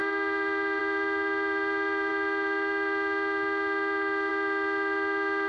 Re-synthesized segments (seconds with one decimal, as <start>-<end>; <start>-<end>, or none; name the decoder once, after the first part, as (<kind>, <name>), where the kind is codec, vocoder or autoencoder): none